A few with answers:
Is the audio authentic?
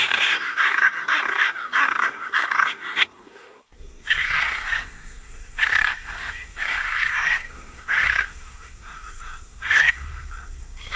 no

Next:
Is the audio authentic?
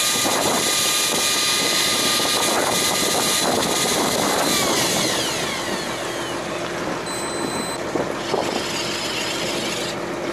yes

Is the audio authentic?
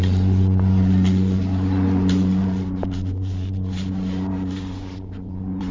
no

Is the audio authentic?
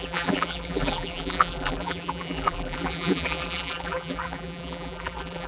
no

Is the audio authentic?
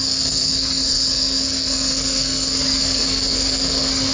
no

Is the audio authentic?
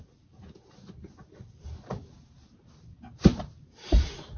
yes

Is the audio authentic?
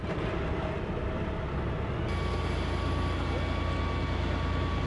yes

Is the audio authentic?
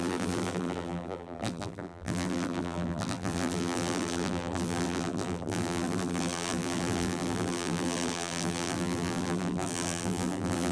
no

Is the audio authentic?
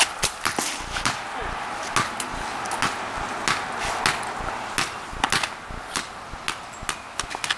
yes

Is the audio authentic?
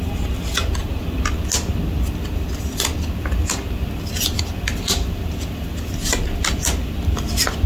yes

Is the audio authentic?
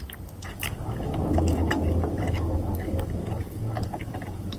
no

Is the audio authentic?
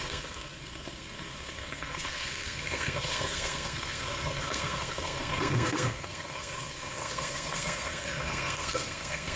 no